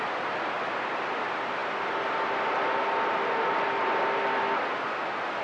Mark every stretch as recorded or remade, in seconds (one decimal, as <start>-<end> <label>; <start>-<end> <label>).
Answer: 0.0-5.4 recorded